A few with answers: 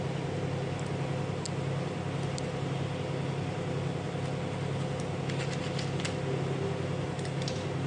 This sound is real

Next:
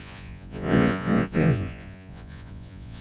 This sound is fake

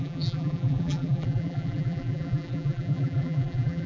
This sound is fake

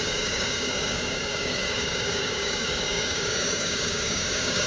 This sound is fake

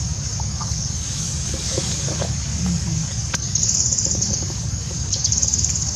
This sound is fake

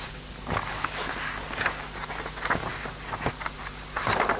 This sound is real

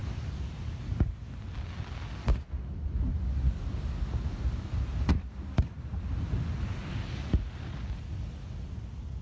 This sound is real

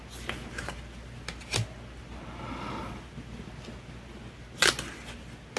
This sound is real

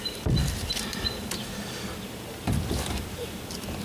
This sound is fake